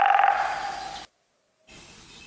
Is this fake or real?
real